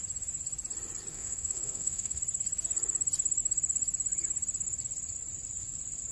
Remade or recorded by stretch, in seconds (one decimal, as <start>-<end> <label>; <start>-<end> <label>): 0.0-1.1 recorded; 1.1-2.2 remade; 2.2-6.1 recorded